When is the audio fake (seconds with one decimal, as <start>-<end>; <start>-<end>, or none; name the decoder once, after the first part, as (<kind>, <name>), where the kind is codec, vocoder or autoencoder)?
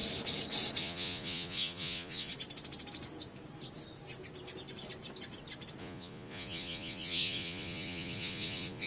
0.8-2.3 (vocoder, Vocos); 5.8-8.9